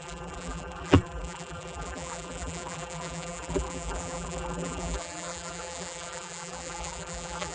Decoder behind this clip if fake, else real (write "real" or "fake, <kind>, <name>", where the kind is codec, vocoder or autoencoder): fake, vocoder, BigVGAN v2